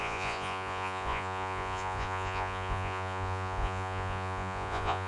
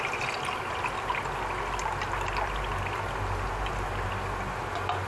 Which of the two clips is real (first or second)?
second